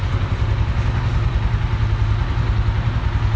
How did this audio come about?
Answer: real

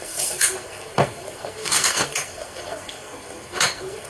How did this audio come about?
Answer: fake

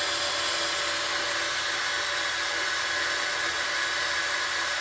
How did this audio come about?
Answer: real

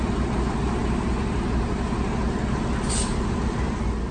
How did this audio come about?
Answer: real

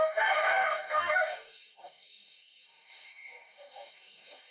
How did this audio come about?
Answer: fake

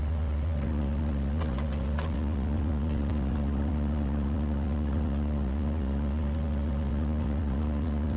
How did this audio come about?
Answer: fake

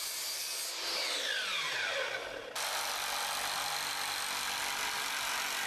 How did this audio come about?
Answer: real